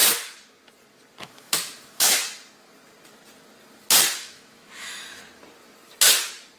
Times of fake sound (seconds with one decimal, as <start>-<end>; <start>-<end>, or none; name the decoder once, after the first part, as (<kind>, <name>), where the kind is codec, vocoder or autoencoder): 1.2-2.2 (autoencoder, DAC-VAE); 4.2-5.2

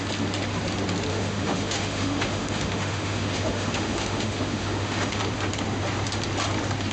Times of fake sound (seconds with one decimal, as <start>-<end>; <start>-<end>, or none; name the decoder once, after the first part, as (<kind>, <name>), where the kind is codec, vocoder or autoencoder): 1.1-5.2 (autoencoder, DAC-VAE)

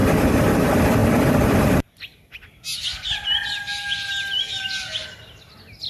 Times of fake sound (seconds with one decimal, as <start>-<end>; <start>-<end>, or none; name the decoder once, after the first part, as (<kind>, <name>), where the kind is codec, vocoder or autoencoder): none